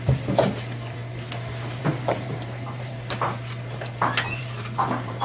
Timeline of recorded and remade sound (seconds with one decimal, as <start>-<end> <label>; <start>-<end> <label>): 0.0-1.0 remade; 1.0-1.8 recorded; 1.8-2.9 remade; 2.9-4.4 recorded; 4.4-5.2 remade